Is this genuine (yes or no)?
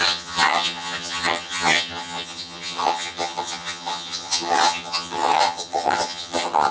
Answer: no